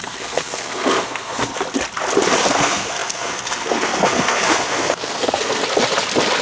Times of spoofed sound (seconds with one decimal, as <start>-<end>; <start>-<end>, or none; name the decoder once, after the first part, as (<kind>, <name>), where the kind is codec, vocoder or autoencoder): 0.0-1.5 (codec, SNAC); 2.5-5.6